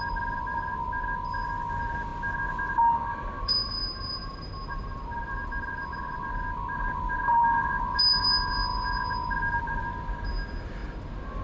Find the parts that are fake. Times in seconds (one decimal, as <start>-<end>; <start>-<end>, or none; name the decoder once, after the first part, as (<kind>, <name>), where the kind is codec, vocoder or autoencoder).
0.0-2.1 (vocoder, BigVGAN v2); 2.7-8.7; 9.4-10.8